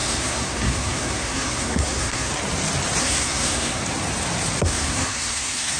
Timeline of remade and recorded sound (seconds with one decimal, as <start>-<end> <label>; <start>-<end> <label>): 0.0-2.3 remade; 2.3-3.0 recorded; 3.0-3.8 remade; 3.8-4.6 recorded; 4.6-5.8 remade